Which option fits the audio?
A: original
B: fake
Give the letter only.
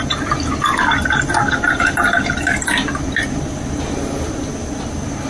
A